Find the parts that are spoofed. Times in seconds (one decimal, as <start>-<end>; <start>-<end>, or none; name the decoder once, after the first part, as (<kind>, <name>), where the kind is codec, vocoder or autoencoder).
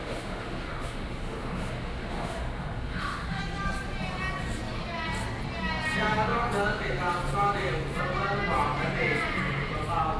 0.0-3.4 (autoencoder, DAC-VAE)